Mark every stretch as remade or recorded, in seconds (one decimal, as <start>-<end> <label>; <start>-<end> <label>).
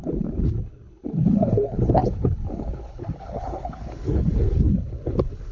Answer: 0.0-5.5 remade